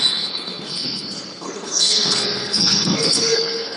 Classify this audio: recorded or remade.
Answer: remade